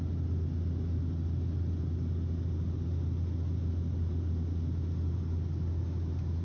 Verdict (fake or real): real